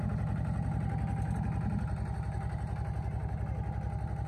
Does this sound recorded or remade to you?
recorded